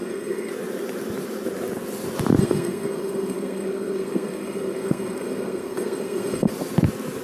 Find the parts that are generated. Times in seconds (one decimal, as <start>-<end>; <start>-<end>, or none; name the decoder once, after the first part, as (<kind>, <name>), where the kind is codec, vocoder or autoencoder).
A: 0.0-0.5 (codec, SNAC); 2.4-6.5